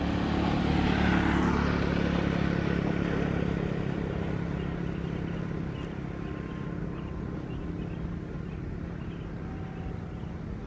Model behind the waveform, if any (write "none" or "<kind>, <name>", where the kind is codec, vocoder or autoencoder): none